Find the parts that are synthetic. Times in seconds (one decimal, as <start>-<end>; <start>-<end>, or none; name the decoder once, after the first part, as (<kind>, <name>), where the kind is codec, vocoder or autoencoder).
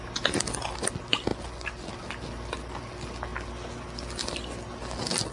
none